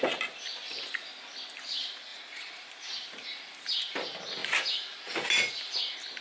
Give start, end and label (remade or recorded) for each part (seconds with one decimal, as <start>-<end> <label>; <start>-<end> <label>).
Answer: 0.0-2.1 recorded; 2.1-2.9 remade; 2.9-6.2 recorded

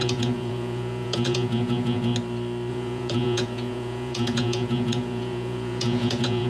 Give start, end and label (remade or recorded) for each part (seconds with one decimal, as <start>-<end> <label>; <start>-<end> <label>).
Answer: 0.0-2.1 remade; 2.1-2.7 recorded; 2.7-6.5 remade

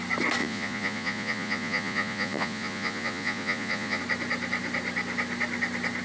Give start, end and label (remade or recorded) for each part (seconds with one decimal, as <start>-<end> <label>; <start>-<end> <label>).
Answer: 0.0-0.4 recorded; 0.4-4.0 remade; 4.0-6.0 recorded